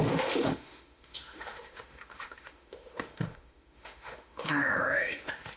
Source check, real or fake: fake